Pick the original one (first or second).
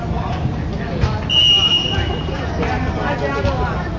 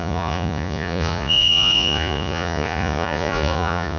first